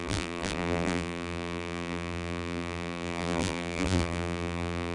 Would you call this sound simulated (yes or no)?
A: yes